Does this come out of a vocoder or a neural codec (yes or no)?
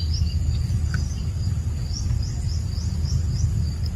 no